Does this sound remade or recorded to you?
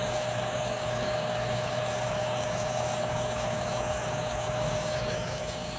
remade